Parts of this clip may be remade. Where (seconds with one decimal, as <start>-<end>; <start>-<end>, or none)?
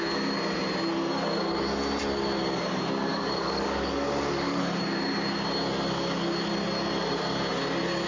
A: 3.1-4.6